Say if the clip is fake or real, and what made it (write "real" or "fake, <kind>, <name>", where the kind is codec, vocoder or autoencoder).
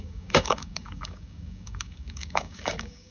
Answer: fake, codec, DAC